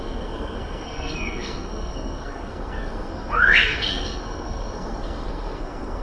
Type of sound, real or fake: fake